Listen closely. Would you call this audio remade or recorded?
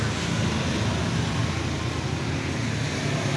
recorded